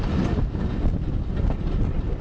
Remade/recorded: recorded